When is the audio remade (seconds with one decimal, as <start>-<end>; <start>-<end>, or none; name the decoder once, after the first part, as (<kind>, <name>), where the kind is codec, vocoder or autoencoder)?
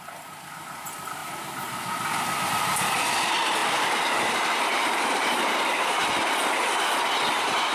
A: 4.7-5.4 (vocoder, BigVGAN v2)